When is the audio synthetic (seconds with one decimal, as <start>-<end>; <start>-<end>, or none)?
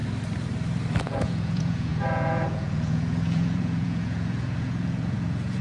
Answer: 1.0-5.6